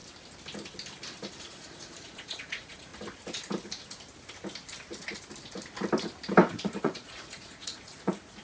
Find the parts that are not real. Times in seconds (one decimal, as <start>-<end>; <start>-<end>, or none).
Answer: 1.4-2.9; 6.5-8.4